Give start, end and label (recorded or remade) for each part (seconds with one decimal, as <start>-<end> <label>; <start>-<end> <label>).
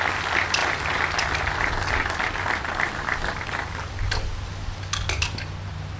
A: 0.0-6.0 recorded